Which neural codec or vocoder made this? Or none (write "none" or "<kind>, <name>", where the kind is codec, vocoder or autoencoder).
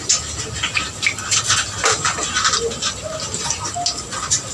none